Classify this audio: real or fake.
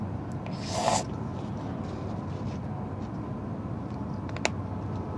real